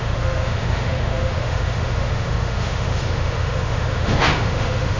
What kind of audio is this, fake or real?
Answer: fake